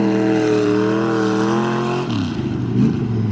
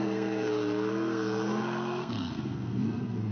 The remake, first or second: second